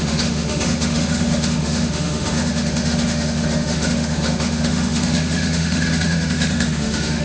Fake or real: fake